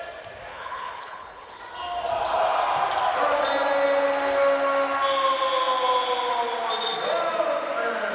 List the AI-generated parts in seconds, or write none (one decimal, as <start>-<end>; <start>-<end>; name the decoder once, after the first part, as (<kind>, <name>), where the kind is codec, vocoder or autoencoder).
0.5-1.6 (codec, HILCodec)

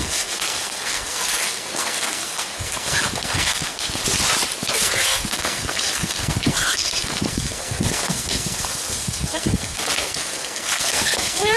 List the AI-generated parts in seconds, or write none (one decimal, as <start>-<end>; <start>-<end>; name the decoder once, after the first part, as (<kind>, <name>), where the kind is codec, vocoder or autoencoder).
0.0-4.0 (codec, SNAC); 4.6-11.6

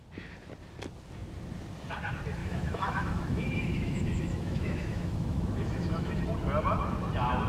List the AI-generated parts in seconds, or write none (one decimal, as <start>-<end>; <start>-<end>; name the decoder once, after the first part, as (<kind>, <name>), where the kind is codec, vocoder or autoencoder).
2.4-6.2 (autoencoder, DAC-VAE)

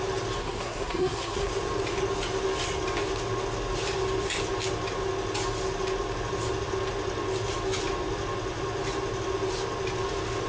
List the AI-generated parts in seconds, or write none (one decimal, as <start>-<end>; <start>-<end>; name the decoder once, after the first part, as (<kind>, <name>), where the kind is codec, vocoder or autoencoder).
0.4-1.5 (codec, SNAC)